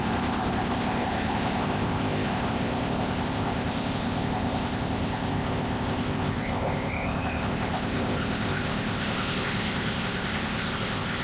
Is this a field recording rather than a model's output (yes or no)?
no